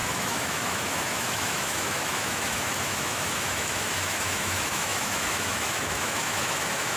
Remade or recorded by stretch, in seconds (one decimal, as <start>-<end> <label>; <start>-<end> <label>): 0.0-7.0 remade